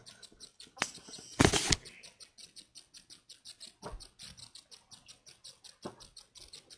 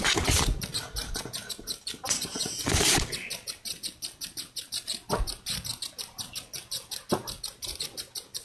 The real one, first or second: first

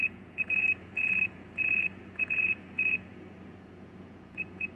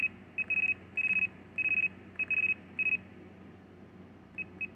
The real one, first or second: second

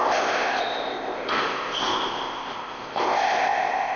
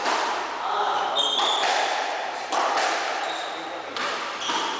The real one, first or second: second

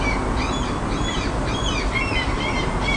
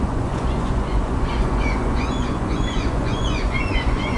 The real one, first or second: first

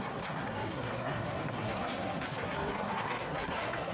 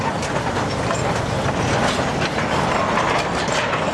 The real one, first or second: second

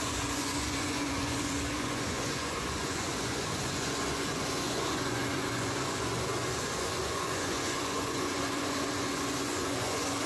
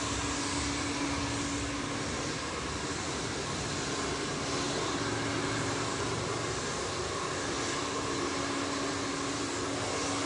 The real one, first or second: second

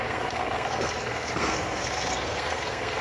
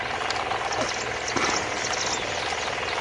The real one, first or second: second